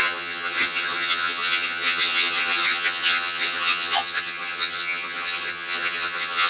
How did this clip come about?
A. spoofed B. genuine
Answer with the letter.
A